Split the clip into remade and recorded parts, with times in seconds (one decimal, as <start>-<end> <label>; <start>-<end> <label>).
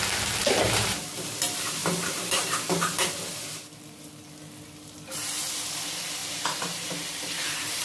0.0-0.4 recorded; 0.4-1.1 remade; 1.1-1.8 recorded; 1.8-3.1 remade; 3.1-6.2 recorded; 6.2-7.8 remade